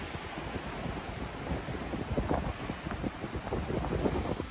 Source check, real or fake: real